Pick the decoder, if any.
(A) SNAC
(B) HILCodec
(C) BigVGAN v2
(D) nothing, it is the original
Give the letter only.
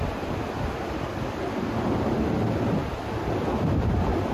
D